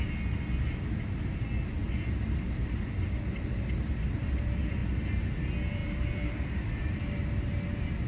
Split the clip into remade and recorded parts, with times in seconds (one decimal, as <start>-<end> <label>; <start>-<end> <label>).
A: 0.0-5.8 recorded; 5.8-6.8 remade; 6.8-8.1 recorded